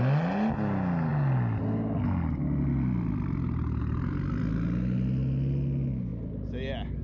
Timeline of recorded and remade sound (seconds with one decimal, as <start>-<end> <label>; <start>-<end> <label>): 0.0-7.0 recorded